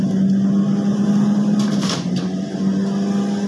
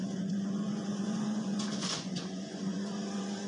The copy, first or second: second